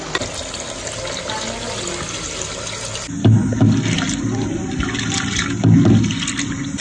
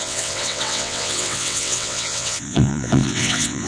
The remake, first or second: second